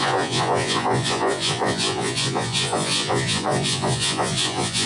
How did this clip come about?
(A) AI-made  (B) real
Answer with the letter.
A